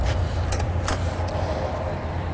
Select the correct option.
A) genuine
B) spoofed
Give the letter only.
A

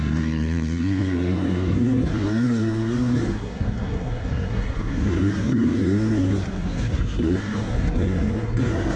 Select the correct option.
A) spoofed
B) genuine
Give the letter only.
A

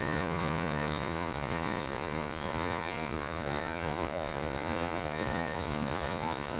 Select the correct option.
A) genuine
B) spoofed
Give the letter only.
B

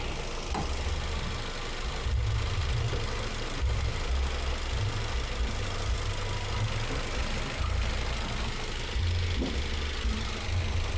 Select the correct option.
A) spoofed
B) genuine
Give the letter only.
B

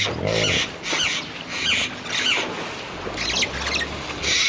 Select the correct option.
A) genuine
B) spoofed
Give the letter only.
A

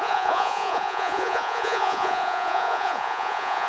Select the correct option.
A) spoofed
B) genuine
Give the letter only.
A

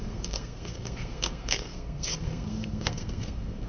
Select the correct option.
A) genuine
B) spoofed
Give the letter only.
B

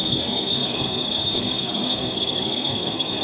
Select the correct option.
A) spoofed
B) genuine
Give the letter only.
A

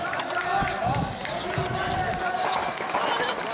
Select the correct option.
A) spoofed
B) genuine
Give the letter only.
B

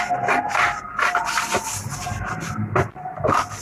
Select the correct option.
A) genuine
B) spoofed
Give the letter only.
A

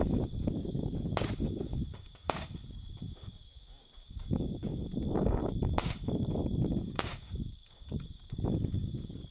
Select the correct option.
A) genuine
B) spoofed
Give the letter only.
B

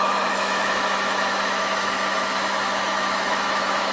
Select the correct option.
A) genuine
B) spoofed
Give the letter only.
B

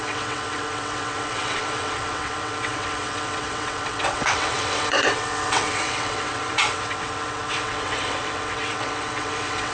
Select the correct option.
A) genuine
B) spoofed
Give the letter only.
B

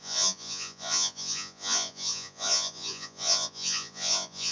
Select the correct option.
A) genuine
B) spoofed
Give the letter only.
B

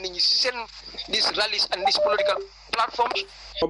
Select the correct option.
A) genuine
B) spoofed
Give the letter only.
A